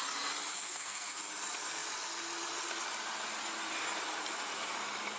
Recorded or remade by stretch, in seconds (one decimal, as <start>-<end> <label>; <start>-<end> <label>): 0.0-0.5 recorded; 0.5-1.2 remade; 1.2-5.2 recorded